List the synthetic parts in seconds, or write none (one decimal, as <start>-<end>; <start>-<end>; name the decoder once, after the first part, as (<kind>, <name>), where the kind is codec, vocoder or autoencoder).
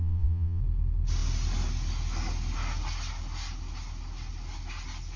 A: 0.0-0.6 (vocoder, Vocos)